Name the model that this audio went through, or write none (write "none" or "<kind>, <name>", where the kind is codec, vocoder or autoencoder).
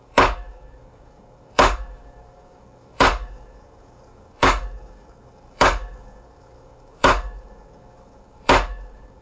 codec, DAC